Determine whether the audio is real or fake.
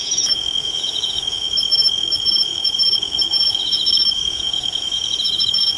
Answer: fake